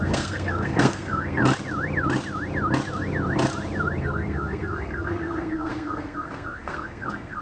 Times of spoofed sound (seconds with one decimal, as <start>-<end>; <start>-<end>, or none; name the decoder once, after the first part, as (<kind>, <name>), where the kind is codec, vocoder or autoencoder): 0.0-1.4 (codec, SNAC); 4.0-7.4